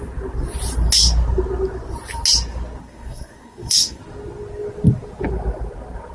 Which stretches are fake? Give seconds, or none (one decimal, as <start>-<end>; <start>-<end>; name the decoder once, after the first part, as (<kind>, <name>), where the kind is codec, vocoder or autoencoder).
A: 2.8-4.0 (codec, SNAC)